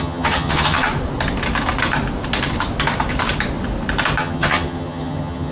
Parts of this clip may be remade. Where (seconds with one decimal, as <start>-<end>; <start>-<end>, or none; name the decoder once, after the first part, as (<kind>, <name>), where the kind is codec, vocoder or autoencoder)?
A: 0.0-0.9 (vocoder, HiFi-GAN); 4.2-5.5